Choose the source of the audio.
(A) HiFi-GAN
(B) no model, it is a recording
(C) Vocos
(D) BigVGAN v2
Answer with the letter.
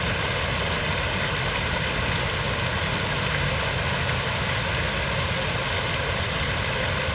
B